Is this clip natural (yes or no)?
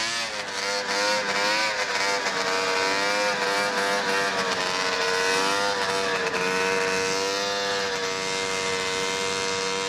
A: yes